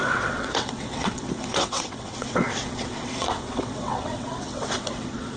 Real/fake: fake